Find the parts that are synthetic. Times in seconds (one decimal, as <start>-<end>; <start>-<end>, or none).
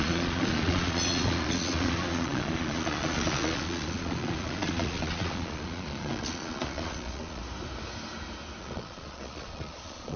0.0-7.4; 8.6-10.2